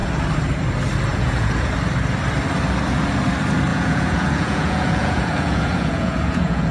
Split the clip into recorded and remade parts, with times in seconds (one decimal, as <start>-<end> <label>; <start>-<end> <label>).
0.0-1.1 recorded; 1.1-1.7 remade; 1.7-3.7 recorded; 3.7-6.7 remade